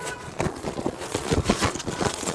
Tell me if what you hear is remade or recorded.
remade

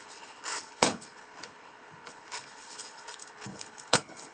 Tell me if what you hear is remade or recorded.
remade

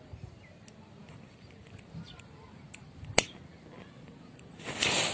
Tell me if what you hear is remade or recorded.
recorded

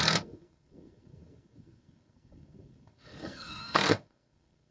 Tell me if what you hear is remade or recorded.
remade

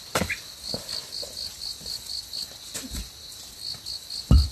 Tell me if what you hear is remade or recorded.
recorded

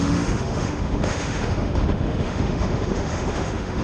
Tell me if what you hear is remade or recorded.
remade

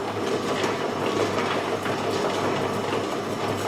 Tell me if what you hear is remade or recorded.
recorded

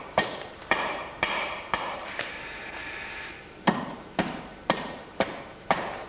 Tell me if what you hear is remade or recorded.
remade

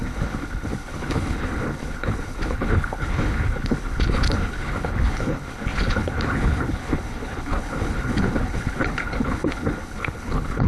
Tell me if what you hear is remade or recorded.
remade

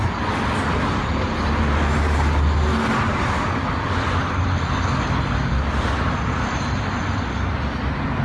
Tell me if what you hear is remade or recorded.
recorded